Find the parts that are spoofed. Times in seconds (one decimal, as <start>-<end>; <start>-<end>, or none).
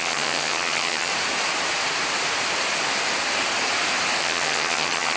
0.0-1.1; 4.2-5.2